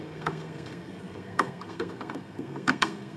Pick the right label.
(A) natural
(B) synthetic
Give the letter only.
B